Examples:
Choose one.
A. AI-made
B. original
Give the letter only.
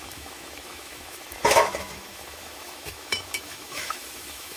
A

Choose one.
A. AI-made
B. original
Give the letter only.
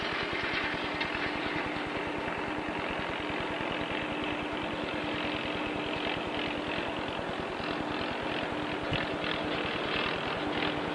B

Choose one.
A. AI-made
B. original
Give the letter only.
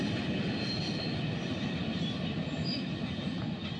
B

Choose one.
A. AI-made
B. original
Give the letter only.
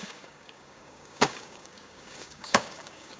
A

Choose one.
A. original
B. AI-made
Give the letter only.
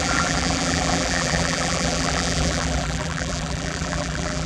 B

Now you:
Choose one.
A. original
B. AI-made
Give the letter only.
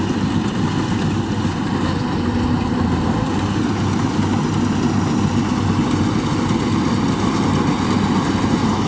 A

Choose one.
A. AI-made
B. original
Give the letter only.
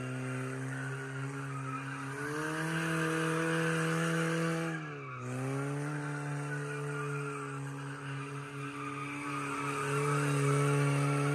B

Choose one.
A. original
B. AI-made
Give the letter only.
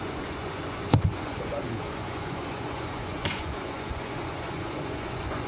B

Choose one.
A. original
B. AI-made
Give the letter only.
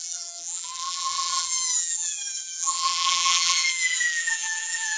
B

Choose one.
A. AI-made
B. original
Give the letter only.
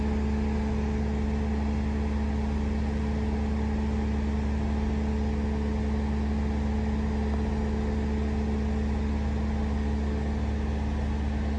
B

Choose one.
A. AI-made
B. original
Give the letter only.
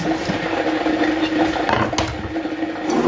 B